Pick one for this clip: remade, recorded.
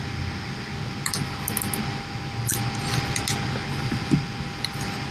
recorded